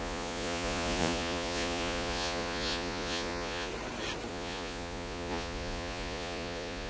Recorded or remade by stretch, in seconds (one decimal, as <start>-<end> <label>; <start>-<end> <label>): 0.0-3.7 remade; 3.7-4.3 recorded; 4.3-6.9 remade